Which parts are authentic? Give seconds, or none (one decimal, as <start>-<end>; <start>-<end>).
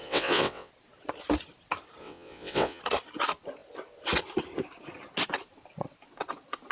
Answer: 0.7-2.0; 2.8-6.7